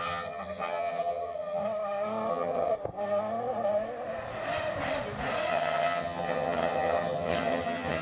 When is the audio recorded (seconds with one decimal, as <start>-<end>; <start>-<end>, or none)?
1.6-2.3; 2.7-5.5